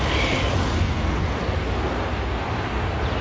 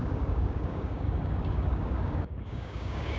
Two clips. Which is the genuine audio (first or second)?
first